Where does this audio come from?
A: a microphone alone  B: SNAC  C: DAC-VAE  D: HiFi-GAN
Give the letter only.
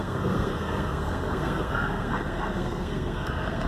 B